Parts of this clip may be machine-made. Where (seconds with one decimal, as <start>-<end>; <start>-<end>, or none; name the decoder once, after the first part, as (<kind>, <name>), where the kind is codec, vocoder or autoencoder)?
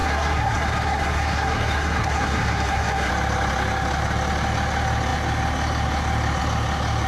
0.0-3.1 (codec, SNAC)